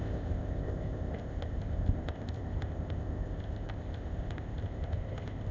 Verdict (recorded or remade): remade